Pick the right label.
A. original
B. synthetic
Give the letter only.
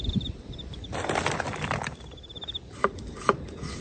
A